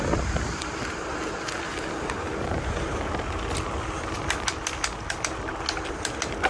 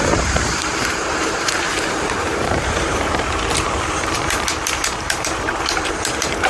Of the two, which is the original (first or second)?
first